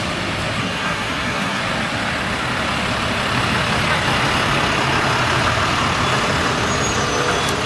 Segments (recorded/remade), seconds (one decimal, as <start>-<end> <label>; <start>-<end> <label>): 0.0-0.6 recorded; 0.6-1.6 remade; 1.6-7.7 recorded